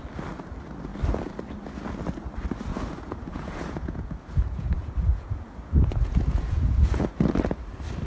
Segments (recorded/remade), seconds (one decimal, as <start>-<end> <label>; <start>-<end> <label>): 0.0-2.7 recorded; 2.7-7.0 remade; 7.0-8.1 recorded